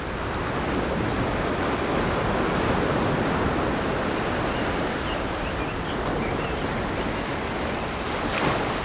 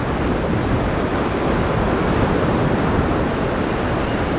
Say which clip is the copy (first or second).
second